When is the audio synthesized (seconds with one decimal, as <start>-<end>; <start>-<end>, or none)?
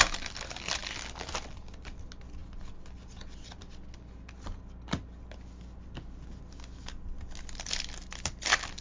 none